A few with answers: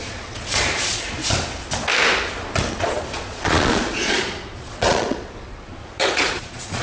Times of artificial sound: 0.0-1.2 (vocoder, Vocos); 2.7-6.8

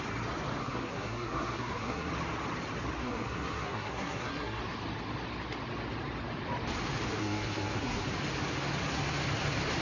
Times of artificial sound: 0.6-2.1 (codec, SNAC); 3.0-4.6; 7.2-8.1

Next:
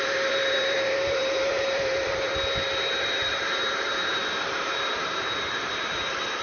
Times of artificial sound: 0.0-2.3 (vocoder, BigVGAN v2); 3.0-6.4